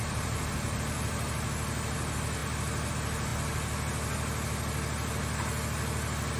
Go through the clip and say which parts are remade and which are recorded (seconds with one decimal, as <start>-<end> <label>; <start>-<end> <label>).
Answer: 0.0-6.4 recorded